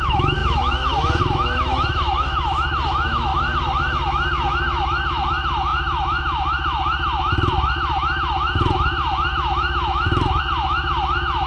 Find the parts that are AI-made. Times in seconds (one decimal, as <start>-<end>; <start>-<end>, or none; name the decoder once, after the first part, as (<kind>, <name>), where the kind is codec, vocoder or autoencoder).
0.0-11.5 (autoencoder, DAC-VAE)